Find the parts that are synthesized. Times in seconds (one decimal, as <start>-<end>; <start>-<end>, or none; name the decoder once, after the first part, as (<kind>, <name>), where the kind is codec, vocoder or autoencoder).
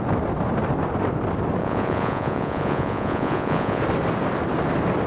1.6-3.8 (vocoder, Vocos)